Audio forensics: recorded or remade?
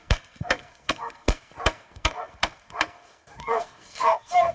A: remade